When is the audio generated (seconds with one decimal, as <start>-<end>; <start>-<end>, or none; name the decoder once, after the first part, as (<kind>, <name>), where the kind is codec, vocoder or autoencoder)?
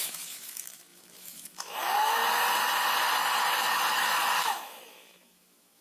0.0-2.2 (autoencoder, DAC-VAE); 4.4-5.8